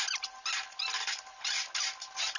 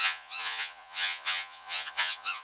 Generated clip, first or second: second